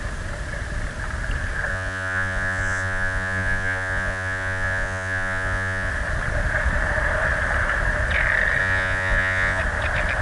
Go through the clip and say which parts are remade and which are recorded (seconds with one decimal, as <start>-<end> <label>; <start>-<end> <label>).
0.0-1.7 recorded; 1.7-5.9 remade; 5.9-8.6 recorded; 8.6-9.6 remade; 9.6-10.2 recorded